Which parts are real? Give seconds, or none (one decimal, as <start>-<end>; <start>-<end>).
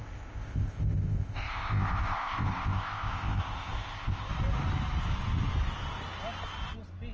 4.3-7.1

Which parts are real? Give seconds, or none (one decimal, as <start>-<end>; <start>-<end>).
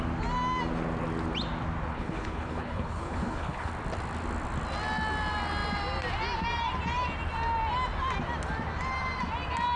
0.0-1.9; 3.7-9.8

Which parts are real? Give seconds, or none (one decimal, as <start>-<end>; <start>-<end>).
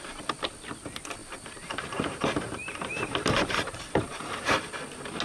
0.0-1.2; 4.3-5.2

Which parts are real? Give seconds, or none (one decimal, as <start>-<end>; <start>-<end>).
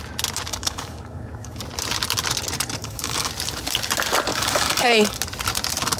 0.0-0.5; 1.6-2.8; 3.3-4.3; 5.2-6.0